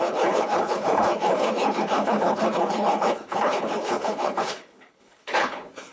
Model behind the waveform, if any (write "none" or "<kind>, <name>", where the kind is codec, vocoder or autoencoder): codec, HILCodec